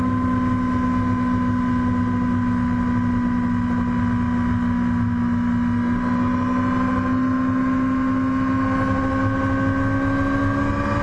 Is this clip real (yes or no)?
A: yes